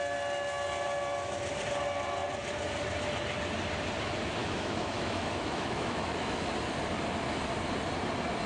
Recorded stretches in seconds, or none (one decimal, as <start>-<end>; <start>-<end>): 0.0-4.4; 6.5-8.5